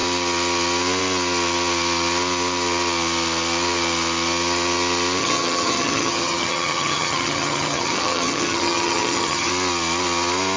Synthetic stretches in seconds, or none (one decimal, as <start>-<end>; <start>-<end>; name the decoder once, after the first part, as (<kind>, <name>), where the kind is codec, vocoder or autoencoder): 5.2-9.5 (vocoder, HiFi-GAN)